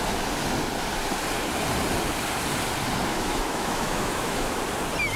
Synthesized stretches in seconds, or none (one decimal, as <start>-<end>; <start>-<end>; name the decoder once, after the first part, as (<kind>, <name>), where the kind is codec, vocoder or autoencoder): 3.1-4.6 (autoencoder, DAC-VAE)